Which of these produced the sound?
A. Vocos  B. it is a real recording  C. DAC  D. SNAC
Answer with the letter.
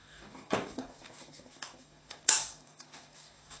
C